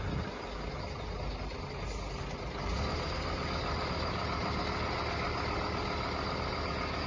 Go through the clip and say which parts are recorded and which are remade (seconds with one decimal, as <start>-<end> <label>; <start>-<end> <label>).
0.0-7.1 recorded